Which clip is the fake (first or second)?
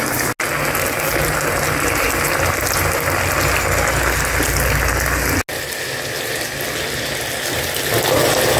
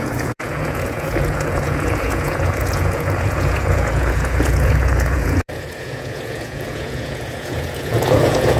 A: second